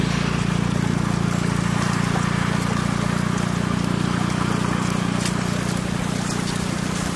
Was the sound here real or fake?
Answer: real